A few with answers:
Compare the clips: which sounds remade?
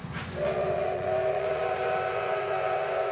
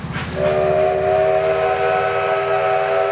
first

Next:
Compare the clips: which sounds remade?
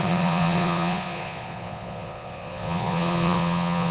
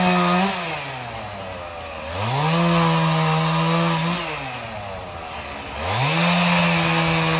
first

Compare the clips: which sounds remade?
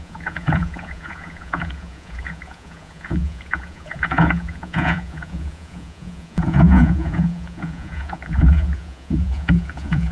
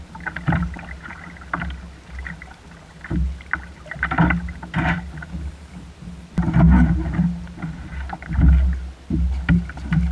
first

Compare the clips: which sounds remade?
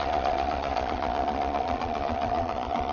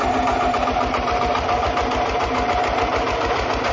first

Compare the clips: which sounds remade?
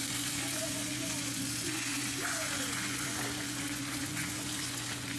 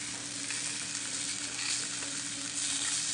first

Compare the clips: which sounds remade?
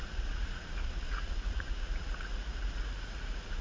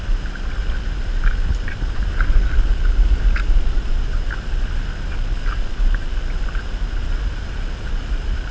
first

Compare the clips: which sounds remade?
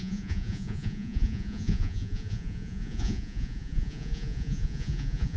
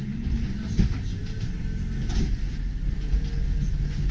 first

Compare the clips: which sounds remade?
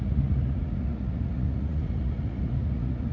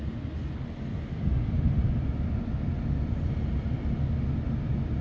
first